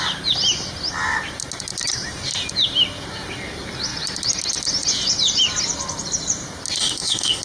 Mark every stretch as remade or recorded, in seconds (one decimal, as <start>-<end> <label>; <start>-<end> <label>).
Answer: 0.0-6.8 recorded; 6.8-7.4 remade